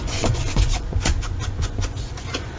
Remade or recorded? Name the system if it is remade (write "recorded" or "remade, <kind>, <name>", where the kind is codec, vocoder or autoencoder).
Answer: remade, vocoder, Vocos